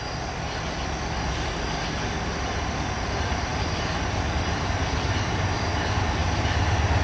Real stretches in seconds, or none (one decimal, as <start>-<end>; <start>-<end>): 0.0-7.0